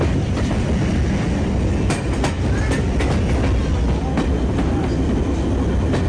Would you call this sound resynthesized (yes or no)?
no